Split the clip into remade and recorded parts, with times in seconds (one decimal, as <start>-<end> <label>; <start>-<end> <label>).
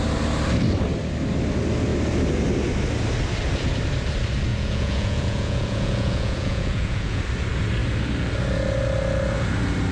0.0-4.5 recorded; 4.5-7.2 remade; 7.2-9.9 recorded